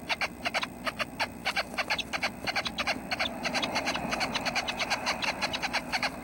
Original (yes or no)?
yes